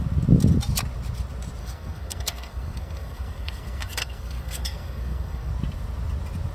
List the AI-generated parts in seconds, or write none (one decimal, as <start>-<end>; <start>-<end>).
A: 1.6-5.5